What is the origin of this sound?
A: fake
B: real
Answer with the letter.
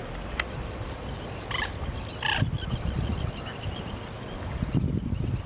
B